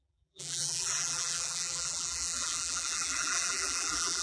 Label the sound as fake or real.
fake